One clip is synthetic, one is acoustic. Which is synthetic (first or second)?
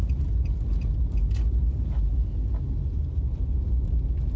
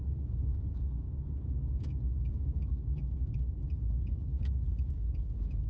second